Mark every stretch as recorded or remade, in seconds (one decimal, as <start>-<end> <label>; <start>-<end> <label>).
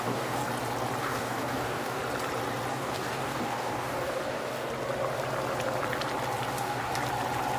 0.0-0.4 remade; 0.4-1.0 recorded; 1.0-2.0 remade; 2.0-2.7 recorded; 2.7-4.7 remade; 4.7-6.5 recorded; 6.5-6.9 remade; 6.9-7.6 recorded